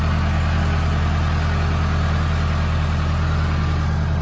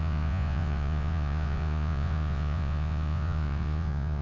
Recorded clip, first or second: first